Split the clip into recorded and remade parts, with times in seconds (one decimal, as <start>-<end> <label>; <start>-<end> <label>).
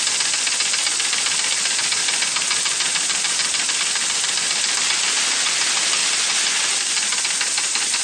0.0-8.0 recorded